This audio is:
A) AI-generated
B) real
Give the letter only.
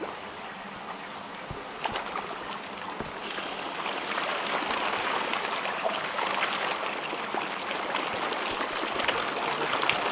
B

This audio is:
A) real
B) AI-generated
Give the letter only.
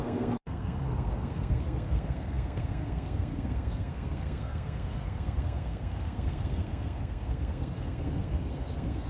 B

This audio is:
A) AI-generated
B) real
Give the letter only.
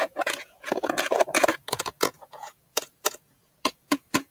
A